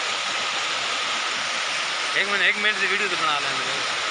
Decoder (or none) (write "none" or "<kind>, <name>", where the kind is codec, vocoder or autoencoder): none